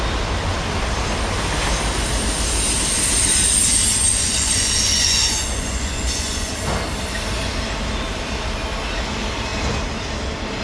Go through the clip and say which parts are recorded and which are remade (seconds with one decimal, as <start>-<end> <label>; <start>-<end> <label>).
0.0-4.1 recorded; 4.1-6.5 remade; 6.5-10.6 recorded